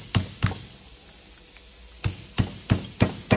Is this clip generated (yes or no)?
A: no